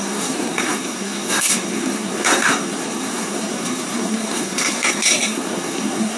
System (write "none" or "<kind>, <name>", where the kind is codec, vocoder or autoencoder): codec, SNAC